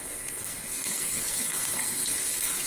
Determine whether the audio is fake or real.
fake